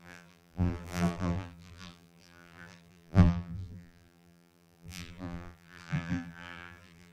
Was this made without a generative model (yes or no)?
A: no